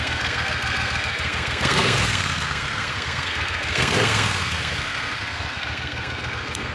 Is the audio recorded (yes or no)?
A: no